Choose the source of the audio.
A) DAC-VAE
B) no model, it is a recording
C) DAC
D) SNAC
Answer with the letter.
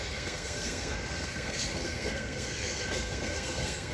D